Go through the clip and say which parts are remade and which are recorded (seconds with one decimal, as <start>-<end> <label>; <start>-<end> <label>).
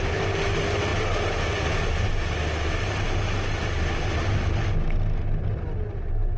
0.0-6.4 recorded